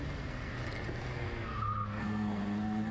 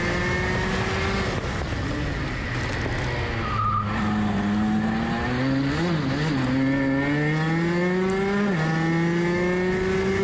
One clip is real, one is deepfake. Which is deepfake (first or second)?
first